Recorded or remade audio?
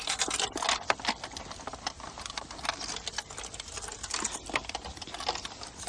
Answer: recorded